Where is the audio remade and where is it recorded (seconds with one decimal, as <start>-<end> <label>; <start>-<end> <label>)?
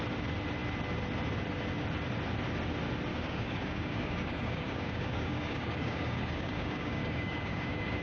0.0-3.1 recorded; 3.1-8.0 remade